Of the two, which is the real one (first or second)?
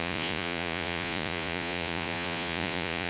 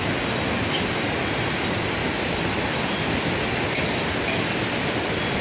second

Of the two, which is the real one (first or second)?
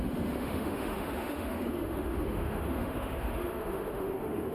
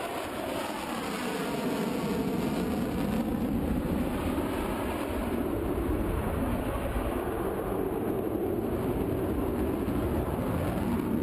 second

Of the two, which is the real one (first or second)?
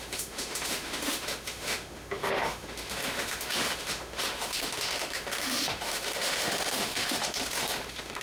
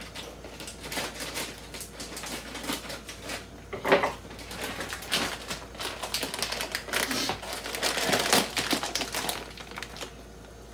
second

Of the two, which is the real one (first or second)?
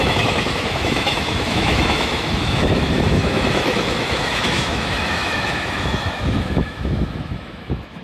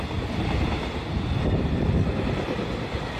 second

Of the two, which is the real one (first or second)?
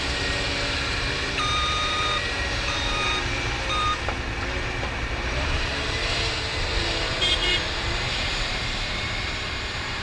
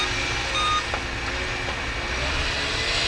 second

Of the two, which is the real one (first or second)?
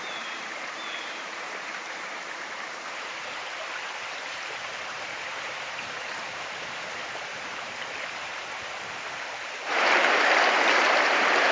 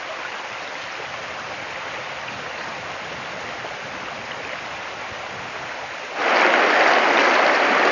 second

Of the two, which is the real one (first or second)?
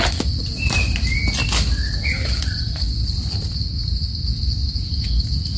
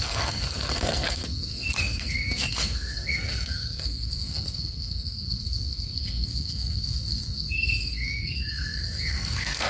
first